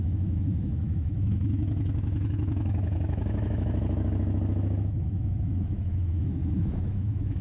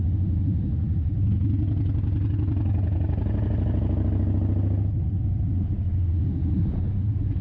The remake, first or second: first